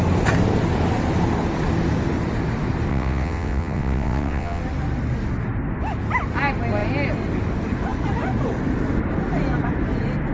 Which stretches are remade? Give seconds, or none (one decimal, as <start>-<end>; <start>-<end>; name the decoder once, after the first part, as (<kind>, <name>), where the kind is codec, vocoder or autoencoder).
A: 2.9-4.6 (vocoder, WaveNeXt)